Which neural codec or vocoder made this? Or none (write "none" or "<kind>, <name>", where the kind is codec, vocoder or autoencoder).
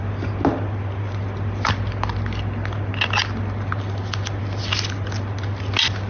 none